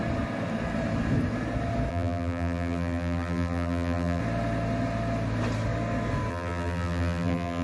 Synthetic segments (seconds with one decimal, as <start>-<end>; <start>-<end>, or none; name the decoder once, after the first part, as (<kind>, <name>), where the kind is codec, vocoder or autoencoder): 1.9-4.2 (vocoder, BigVGAN v2); 6.3-7.6